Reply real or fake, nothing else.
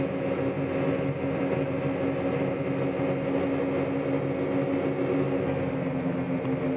real